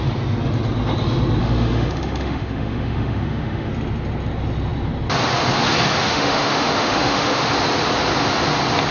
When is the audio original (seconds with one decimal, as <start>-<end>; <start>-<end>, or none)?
0.0-1.4; 3.7-6.0; 7.5-8.9